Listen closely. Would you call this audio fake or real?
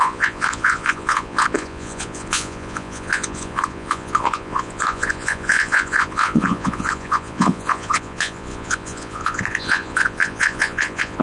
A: fake